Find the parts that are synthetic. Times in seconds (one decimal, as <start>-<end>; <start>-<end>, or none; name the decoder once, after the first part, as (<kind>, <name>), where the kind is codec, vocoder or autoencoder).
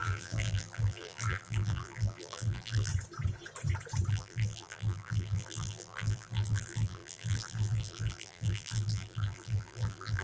0.0-2.9 (vocoder, BigVGAN v2); 4.1-10.2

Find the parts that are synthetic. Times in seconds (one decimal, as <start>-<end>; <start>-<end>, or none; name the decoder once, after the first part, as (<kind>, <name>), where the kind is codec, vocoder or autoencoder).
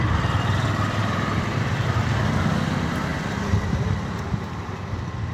1.0-2.2 (vocoder, BigVGAN v2)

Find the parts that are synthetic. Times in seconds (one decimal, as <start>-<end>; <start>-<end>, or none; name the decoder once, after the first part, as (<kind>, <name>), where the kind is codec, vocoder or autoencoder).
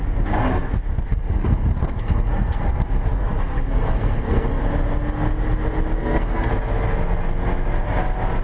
1.1-4.6 (codec, SNAC); 6.0-6.5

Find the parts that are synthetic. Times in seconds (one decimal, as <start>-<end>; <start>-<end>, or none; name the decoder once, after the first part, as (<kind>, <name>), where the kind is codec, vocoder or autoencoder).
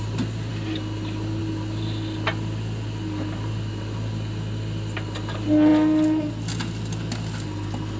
none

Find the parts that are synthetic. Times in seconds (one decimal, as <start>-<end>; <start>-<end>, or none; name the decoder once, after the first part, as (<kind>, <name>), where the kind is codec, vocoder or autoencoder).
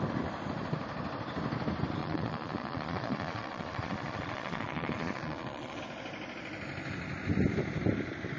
2.0-5.8 (vocoder, Vocos)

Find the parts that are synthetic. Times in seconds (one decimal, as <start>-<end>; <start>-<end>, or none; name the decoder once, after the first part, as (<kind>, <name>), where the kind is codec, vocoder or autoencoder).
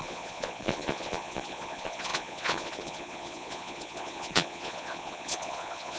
0.0-6.0 (vocoder, Vocos)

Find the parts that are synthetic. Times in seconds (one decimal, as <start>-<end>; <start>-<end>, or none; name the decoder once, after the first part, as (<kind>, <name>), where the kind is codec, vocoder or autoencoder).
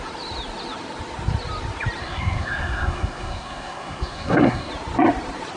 2.0-4.7 (codec, SNAC)